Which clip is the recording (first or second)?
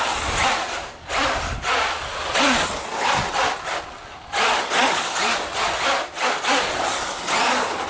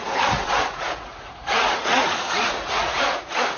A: first